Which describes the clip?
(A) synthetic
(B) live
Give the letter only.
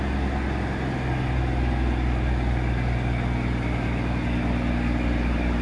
B